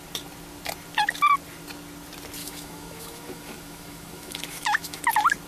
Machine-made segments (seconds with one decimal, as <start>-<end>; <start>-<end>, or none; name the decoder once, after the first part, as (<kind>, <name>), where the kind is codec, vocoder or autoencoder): 2.4-5.0 (autoencoder, DAC-VAE)